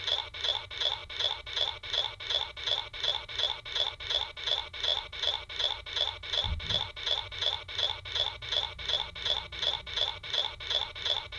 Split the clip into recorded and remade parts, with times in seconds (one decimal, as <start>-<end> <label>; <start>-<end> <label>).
0.0-11.4 recorded